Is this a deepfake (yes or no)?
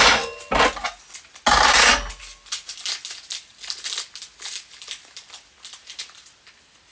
no